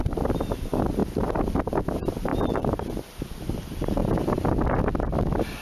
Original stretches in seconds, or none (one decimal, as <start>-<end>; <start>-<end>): 0.0-1.0; 1.5-2.3; 3.3-5.6